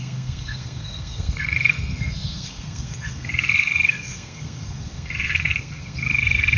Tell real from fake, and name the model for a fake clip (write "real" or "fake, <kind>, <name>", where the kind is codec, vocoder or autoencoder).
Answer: fake, codec, SNAC